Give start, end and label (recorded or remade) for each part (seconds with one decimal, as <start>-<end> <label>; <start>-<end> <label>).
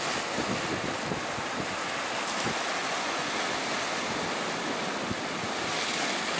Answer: 0.0-2.8 recorded; 2.8-3.3 remade; 3.3-6.4 recorded